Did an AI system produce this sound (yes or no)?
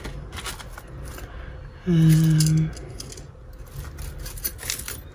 no